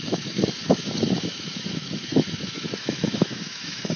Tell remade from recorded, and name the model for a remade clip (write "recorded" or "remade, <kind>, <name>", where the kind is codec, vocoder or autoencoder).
remade, autoencoder, DAC-VAE